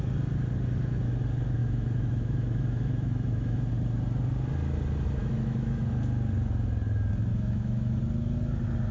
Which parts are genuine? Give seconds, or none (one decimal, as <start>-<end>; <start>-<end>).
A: 0.0-1.6; 3.7-5.2; 6.0-7.3; 8.0-8.9